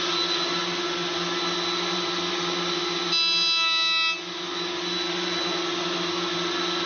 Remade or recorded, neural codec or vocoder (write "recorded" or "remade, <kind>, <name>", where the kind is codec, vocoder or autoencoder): recorded